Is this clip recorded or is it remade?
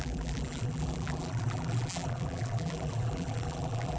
remade